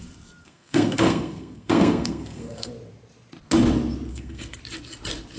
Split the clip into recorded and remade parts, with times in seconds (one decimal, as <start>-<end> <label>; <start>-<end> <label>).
0.0-0.4 recorded; 0.4-2.7 remade; 2.7-4.1 recorded; 4.1-4.6 remade; 4.6-5.4 recorded